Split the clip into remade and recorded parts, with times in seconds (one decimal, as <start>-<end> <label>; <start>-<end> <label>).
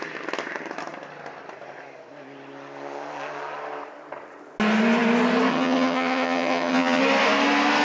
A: 0.0-5.5 recorded; 5.5-7.0 remade; 7.0-7.8 recorded